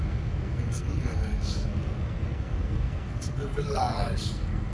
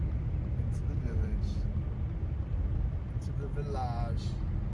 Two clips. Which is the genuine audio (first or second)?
second